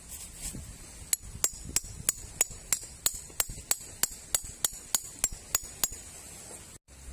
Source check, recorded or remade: recorded